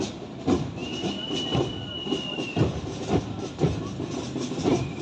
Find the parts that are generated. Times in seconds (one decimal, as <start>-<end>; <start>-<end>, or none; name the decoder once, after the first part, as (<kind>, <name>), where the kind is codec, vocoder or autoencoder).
none